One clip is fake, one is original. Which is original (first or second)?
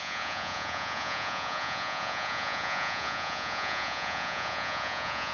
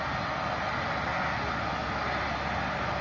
second